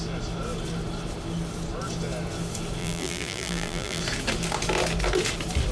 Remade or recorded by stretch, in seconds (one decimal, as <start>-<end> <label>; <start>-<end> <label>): 0.0-2.8 recorded; 2.8-4.0 remade; 4.0-5.7 recorded